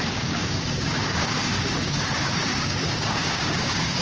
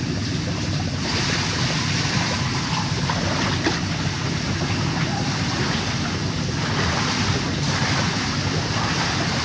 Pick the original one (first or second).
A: second